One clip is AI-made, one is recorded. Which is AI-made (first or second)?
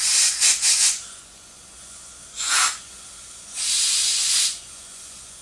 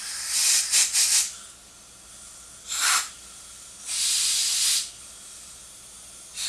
first